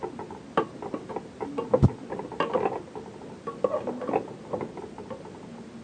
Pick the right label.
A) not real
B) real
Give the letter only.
B